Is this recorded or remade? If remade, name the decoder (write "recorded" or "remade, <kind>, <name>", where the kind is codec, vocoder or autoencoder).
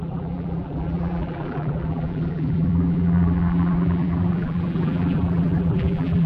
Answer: remade, vocoder, BigVGAN v2